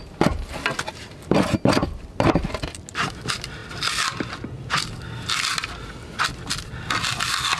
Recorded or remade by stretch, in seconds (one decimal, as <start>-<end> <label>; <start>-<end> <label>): 0.0-1.8 recorded; 1.8-2.5 remade; 2.5-7.6 recorded